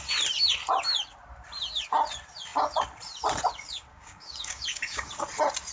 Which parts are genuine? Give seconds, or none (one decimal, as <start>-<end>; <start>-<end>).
0.0-3.9; 5.1-5.7